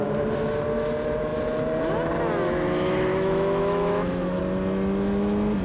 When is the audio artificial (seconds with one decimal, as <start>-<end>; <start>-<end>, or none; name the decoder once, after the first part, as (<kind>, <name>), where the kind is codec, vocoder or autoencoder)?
3.1-4.4 (autoencoder, DAC-VAE)